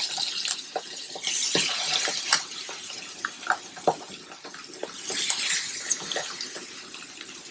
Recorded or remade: recorded